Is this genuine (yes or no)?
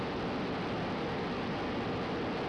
yes